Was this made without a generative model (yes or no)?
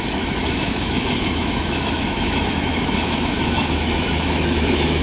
no